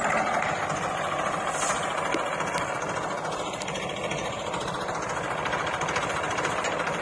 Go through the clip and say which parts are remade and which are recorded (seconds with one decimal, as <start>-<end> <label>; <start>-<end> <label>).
0.0-4.2 recorded; 4.2-4.9 remade; 4.9-7.0 recorded